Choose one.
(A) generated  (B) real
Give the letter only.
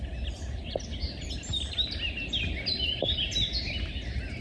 B